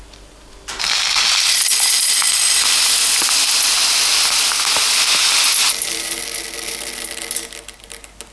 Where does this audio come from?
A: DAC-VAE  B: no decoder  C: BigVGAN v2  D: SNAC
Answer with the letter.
B